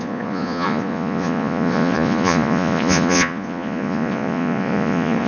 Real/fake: fake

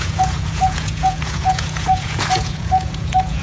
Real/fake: fake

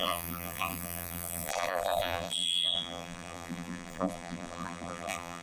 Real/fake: fake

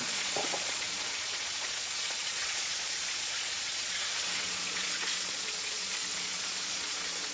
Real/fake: fake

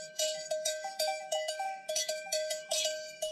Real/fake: fake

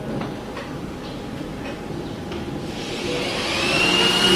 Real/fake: real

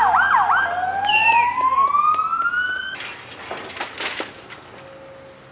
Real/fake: real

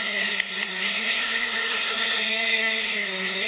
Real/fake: fake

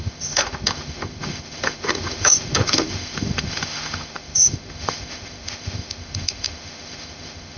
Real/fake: fake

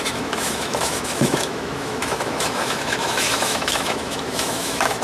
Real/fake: fake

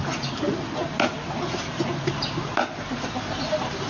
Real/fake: real